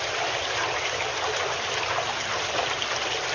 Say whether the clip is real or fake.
real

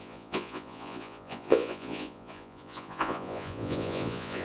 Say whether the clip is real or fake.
fake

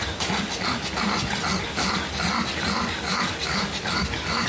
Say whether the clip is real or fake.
real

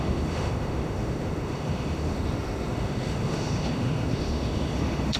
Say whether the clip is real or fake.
fake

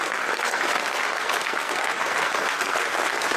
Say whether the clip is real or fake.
fake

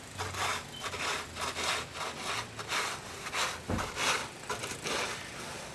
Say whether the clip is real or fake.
real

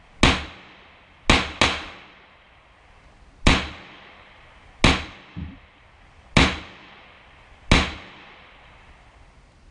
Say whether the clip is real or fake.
real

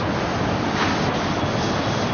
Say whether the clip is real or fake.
real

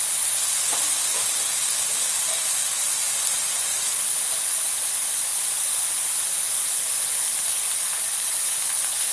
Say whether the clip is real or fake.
real